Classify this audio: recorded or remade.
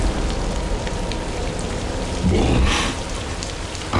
recorded